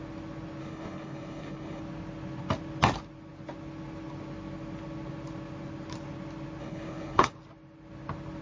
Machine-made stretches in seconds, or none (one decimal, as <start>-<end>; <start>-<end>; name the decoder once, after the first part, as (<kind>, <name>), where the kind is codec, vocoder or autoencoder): 0.6-1.8 (codec, HILCodec); 6.6-7.3